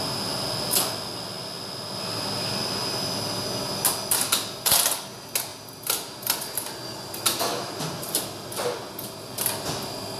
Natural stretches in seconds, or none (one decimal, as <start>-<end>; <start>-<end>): 0.0-10.2